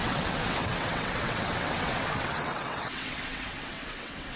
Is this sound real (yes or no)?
no